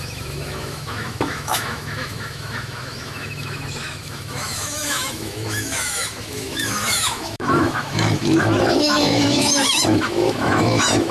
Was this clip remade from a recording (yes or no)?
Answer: yes